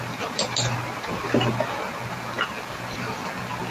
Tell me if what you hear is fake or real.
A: real